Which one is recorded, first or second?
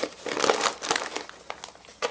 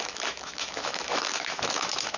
first